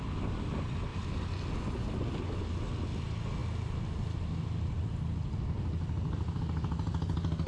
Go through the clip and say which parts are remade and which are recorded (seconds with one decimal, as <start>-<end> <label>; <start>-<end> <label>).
0.0-0.9 recorded; 0.9-2.4 remade; 2.4-7.5 recorded